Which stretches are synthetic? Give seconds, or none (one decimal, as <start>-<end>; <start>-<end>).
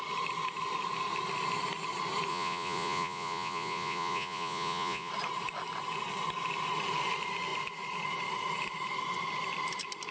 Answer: 2.3-5.1